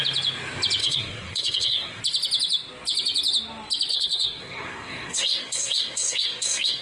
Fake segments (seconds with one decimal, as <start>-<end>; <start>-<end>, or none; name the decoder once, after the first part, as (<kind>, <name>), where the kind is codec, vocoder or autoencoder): 0.8-2.0 (codec, SNAC); 3.9-6.8